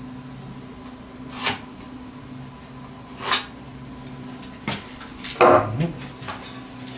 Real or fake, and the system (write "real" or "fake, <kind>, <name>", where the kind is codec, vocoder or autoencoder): real